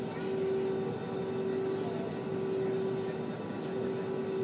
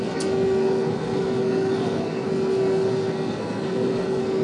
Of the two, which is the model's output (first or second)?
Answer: second